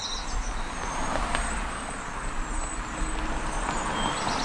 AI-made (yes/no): no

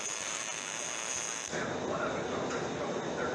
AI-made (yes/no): no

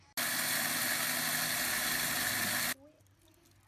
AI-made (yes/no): no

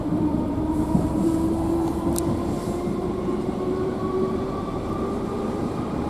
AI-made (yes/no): yes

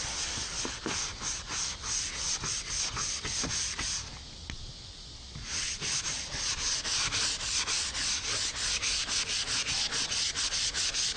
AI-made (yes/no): no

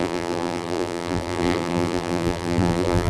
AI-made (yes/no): yes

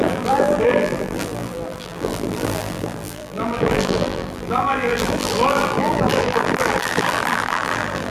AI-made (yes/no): yes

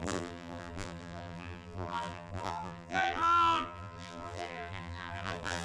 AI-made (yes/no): yes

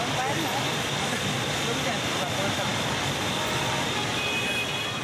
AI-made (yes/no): no